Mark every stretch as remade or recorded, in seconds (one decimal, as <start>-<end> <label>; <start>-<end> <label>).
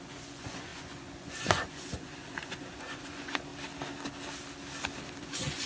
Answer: 0.0-3.5 remade; 3.5-5.2 recorded; 5.2-5.7 remade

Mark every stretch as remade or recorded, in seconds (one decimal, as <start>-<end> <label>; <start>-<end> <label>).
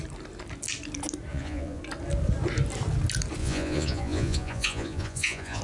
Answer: 0.0-1.3 recorded; 1.3-1.8 remade; 1.8-3.4 recorded; 3.4-5.6 remade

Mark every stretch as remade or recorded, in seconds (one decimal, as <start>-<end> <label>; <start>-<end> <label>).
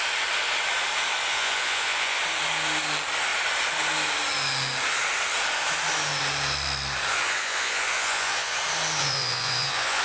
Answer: 0.0-1.3 recorded; 1.3-2.2 remade; 2.2-7.1 recorded; 7.1-8.6 remade; 8.6-9.0 recorded; 9.0-10.0 remade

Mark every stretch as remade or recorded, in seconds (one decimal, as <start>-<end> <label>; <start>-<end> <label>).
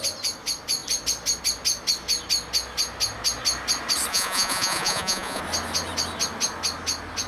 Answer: 0.0-4.1 recorded; 4.1-5.4 remade; 5.4-7.3 recorded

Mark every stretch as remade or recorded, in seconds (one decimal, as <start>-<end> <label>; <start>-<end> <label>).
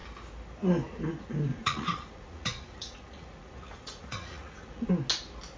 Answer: 0.0-1.5 recorded; 1.5-4.9 remade; 4.9-5.6 recorded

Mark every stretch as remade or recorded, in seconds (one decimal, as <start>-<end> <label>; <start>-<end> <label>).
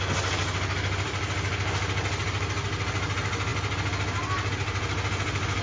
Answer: 0.0-5.6 recorded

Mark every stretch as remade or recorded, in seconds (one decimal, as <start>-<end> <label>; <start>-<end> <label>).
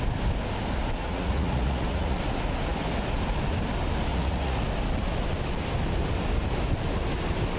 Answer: 0.0-1.0 recorded; 1.0-2.2 remade; 2.2-4.1 recorded; 4.1-4.6 remade; 4.6-7.6 recorded